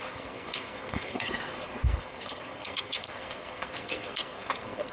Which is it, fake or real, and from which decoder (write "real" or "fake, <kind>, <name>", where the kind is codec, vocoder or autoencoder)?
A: fake, codec, SNAC